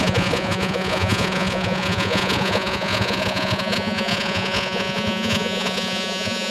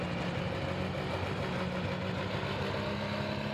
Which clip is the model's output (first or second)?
first